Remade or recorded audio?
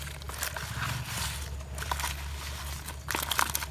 recorded